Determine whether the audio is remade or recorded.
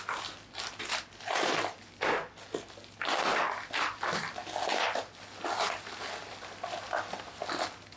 recorded